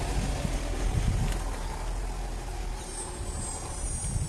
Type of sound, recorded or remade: recorded